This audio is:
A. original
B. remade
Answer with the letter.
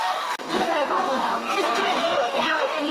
B